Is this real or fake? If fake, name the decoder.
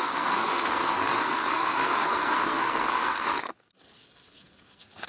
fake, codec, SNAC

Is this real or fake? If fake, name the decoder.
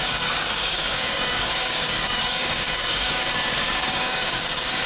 fake, codec, DAC